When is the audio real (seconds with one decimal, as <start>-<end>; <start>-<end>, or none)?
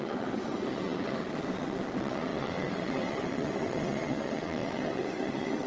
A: none